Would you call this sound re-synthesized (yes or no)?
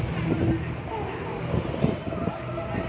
no